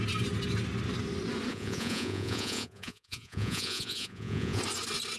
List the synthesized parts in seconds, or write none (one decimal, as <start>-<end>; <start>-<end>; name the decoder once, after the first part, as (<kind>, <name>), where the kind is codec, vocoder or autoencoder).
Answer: 1.5-4.6 (vocoder, Vocos)